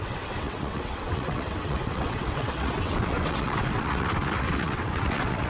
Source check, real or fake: fake